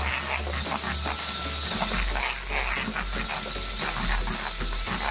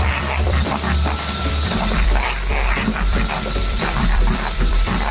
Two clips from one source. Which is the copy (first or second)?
second